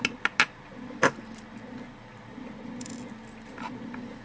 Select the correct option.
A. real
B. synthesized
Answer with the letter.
A